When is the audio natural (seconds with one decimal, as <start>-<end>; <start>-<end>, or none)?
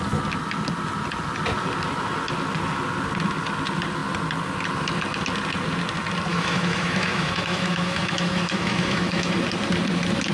0.0-6.3; 9.3-10.3